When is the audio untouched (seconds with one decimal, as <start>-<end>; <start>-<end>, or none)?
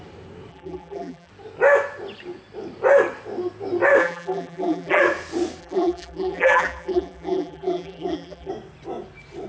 0.0-0.5; 1.3-4.0; 5.0-5.6; 8.5-9.5